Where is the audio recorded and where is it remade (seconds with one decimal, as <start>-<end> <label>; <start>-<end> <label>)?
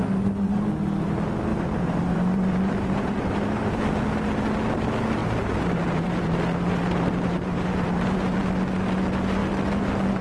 0.0-1.5 recorded; 1.5-3.8 remade; 3.8-5.2 recorded; 5.2-8.6 remade; 8.6-9.4 recorded; 9.4-10.2 remade